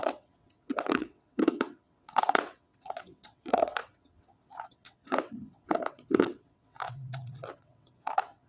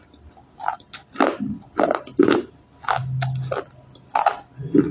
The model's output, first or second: first